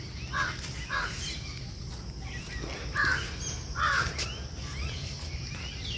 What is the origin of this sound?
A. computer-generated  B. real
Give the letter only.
B